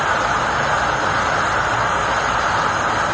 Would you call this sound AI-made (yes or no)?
no